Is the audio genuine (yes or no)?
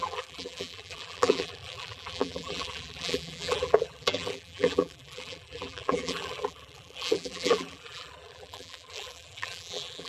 no